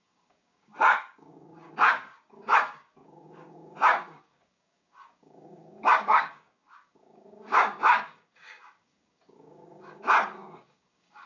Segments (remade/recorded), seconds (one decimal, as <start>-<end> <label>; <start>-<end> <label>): 0.0-11.3 remade